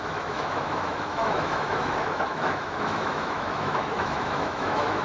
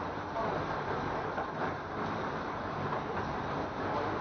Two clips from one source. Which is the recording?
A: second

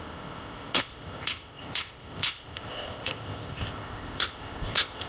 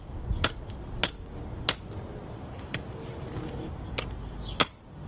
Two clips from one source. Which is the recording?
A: second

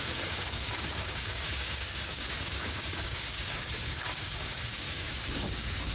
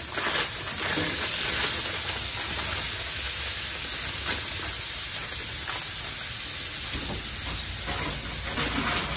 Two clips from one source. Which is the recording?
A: second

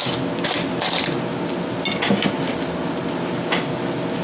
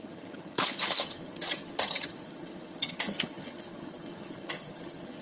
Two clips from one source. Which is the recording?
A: first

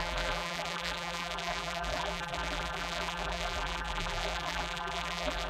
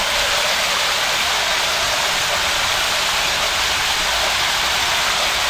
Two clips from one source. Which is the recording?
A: second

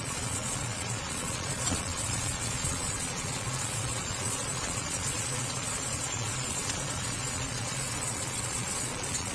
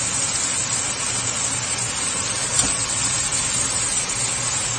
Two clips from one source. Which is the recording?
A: second